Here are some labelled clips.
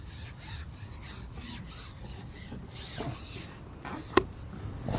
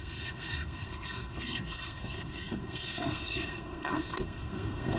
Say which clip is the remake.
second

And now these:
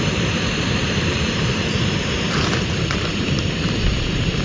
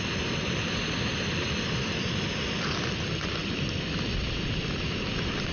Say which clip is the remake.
first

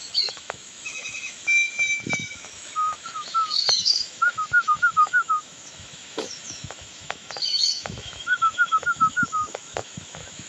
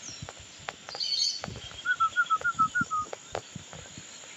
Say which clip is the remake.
first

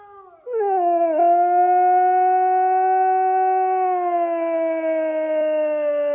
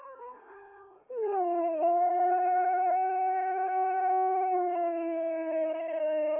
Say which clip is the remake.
second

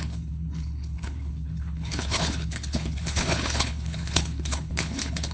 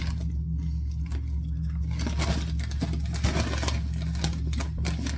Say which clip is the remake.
first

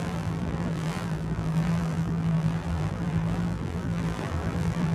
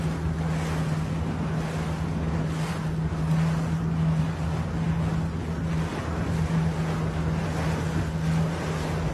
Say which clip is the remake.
first